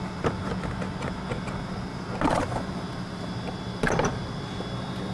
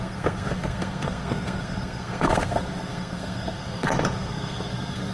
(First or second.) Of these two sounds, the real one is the first